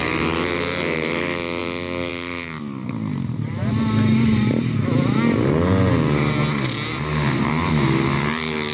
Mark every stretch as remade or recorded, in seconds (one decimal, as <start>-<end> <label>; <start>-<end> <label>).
0.0-8.7 recorded